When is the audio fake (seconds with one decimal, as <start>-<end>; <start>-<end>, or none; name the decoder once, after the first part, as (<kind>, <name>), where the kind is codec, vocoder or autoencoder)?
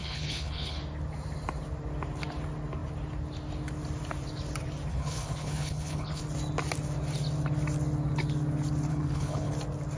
0.0-0.8 (codec, HILCodec); 4.9-6.2; 8.9-9.5